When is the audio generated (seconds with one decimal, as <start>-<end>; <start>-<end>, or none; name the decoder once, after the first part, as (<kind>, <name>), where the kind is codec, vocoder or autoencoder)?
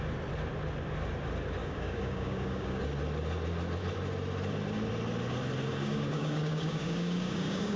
1.6-2.8 (codec, DAC); 5.7-7.8